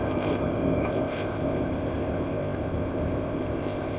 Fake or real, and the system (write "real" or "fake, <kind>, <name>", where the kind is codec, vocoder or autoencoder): fake, codec, ZipCodec